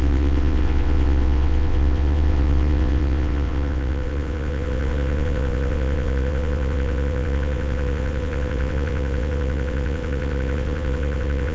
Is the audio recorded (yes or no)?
no